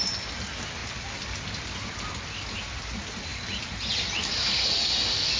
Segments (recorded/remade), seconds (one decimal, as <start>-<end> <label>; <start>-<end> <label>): 0.0-5.4 recorded